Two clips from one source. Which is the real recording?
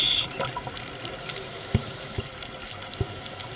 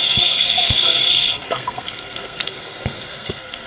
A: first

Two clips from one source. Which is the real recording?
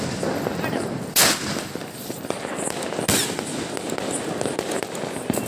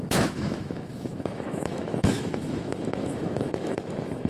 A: first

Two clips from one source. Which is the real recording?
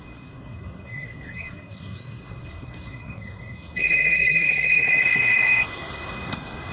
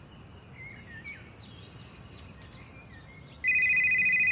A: second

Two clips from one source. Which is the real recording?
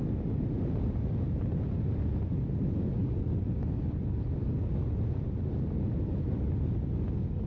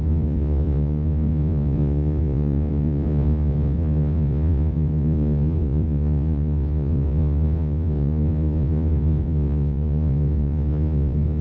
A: first